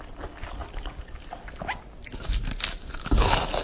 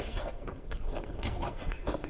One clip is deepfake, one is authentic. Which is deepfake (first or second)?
second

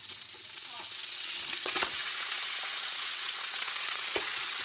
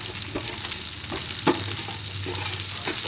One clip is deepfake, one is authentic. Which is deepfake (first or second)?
first